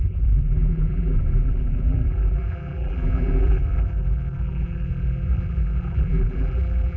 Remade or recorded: remade